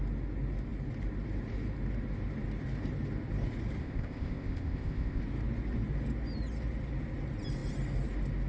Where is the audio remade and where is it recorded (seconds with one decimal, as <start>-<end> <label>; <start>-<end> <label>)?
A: 0.0-3.8 recorded; 3.8-5.2 remade; 5.2-8.5 recorded